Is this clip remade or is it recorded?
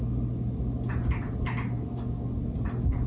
recorded